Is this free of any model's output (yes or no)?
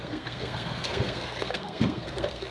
no